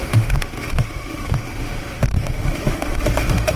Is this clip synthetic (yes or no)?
yes